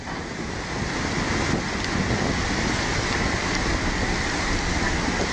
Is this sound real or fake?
real